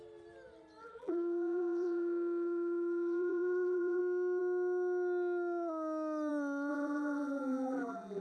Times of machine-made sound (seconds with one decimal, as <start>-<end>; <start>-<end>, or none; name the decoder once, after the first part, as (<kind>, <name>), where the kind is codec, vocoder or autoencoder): 0.8-4.0 (vocoder, BigVGAN v2); 6.7-8.2